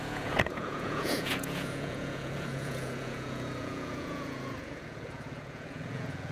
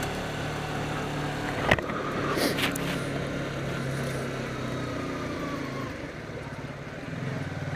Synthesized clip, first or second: first